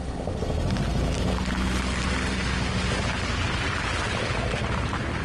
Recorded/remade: recorded